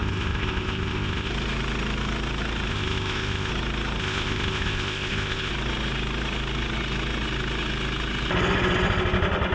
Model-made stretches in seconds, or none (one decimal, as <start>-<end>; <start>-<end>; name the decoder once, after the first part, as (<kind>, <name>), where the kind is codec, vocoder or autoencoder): 0.0-1.3 (codec, ZipCodec); 2.7-3.5; 4.0-5.5